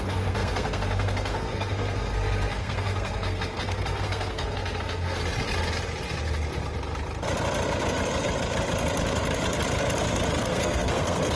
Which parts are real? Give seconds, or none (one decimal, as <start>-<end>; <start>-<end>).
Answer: 5.2-10.4